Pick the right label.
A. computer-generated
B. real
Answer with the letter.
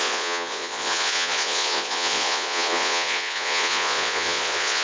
A